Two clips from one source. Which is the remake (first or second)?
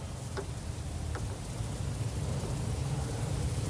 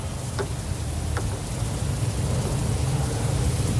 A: first